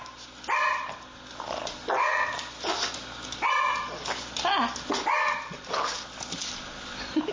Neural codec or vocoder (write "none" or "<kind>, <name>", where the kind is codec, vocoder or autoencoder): none